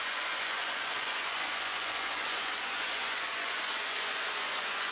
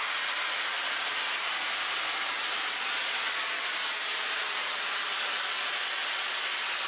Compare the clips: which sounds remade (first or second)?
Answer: first